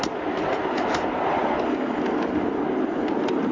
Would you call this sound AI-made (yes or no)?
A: no